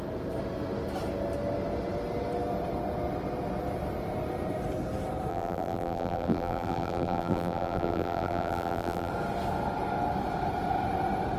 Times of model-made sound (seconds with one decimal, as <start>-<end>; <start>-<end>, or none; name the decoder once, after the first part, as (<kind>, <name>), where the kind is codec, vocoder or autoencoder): 5.3-9.1 (vocoder, BigVGAN v2)